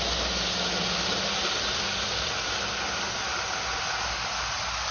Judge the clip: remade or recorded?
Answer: recorded